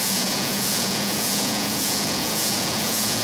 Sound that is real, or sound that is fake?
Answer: fake